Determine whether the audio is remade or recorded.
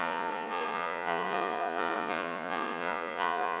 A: remade